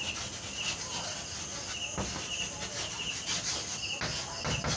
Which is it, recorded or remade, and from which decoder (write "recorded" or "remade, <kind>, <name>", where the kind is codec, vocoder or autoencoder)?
recorded